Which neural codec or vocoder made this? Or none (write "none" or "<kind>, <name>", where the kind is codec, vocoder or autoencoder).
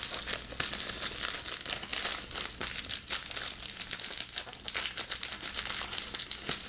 none